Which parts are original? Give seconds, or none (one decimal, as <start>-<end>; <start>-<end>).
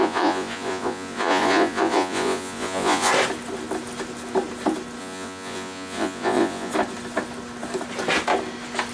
3.1-5.0; 6.7-8.9